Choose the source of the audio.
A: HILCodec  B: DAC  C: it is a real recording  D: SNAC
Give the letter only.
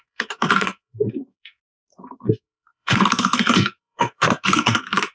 D